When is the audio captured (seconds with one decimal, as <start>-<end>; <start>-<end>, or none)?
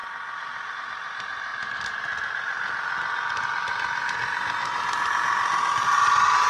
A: 0.0-6.5